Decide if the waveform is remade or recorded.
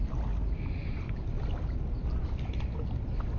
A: recorded